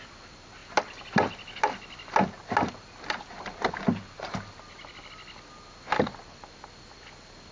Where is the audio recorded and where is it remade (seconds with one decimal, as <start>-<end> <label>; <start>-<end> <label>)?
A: 0.0-7.5 recorded